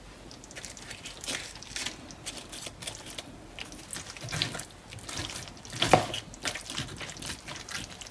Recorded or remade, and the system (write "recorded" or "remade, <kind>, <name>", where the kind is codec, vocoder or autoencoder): recorded